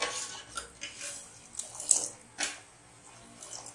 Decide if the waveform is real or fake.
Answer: real